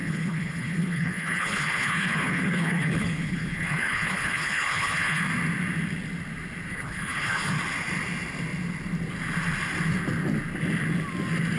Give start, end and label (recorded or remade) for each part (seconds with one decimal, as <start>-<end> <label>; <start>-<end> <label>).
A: 0.0-5.2 remade; 5.2-6.7 recorded; 6.7-7.5 remade; 7.5-11.6 recorded